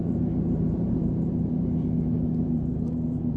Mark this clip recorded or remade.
remade